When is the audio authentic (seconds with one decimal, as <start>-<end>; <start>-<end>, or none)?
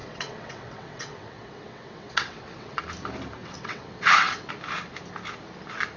2.8-3.4; 4.5-6.0